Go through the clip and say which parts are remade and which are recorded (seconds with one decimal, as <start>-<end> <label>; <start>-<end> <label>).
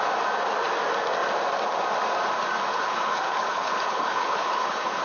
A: 0.0-2.7 recorded; 2.7-5.0 remade